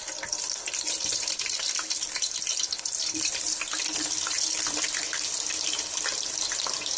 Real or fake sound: real